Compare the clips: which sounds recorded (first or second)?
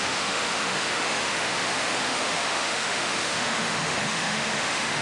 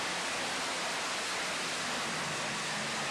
second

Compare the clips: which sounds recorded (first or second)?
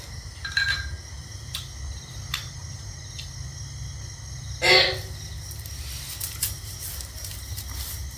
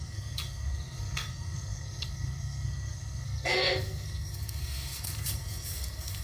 first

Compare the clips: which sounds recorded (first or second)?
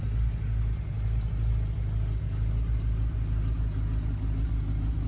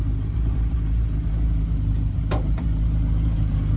first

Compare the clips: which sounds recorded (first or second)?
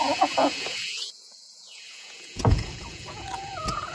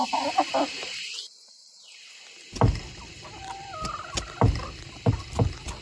second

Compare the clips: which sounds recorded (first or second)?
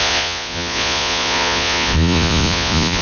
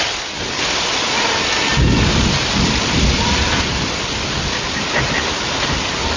second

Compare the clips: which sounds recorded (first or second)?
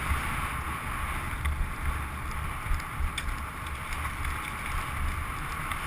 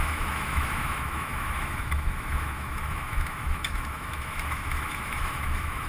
first